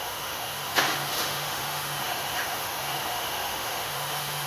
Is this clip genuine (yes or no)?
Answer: no